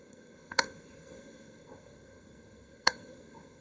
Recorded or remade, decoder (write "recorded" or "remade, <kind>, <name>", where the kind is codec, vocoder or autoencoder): remade, codec, SNAC